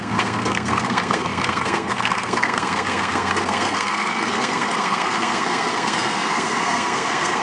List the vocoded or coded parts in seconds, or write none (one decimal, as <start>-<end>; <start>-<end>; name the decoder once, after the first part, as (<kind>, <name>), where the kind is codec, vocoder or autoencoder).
0.0-7.4 (codec, SNAC)